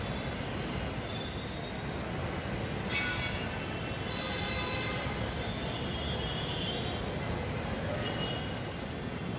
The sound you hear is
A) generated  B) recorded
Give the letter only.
B